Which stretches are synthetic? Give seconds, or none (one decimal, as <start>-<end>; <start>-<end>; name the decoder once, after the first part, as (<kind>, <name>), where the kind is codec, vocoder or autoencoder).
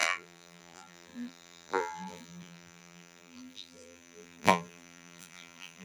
0.0-5.8 (vocoder, BigVGAN v2)